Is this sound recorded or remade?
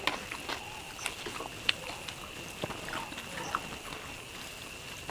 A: recorded